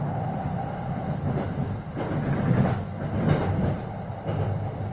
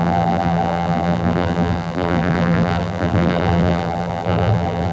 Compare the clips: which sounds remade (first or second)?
second